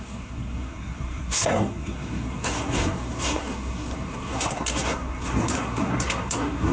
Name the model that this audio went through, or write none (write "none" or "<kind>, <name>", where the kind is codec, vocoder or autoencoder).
codec, SNAC